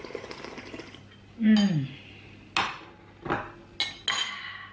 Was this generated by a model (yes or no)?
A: no